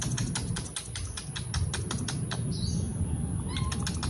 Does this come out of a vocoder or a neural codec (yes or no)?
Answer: no